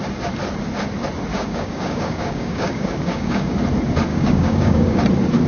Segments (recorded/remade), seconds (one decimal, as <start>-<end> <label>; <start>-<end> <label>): 0.0-1.3 recorded; 1.3-3.5 remade; 3.5-4.1 recorded; 4.1-5.0 remade; 5.0-5.5 recorded